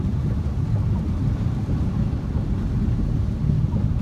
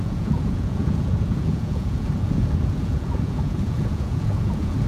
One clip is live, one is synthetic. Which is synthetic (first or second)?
second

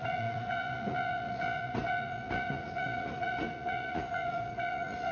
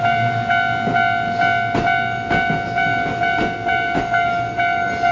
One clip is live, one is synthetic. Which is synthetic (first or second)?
first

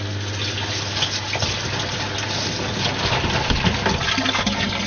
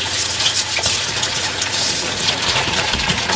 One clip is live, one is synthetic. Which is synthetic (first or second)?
second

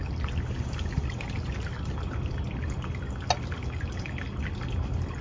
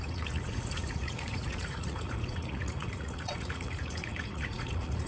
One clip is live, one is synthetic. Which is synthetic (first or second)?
second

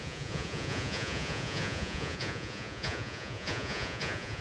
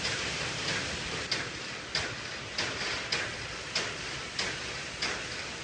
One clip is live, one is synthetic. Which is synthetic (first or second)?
first